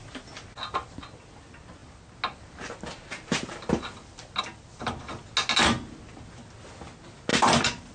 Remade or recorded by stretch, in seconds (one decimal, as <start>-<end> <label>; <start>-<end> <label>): 0.0-7.9 recorded